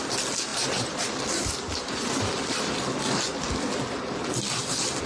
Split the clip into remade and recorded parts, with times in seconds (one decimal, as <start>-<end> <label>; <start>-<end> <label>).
0.0-5.1 recorded